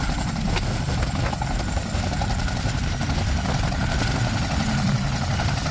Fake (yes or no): no